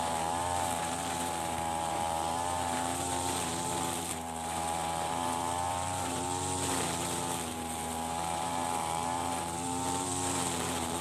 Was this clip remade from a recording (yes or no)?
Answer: yes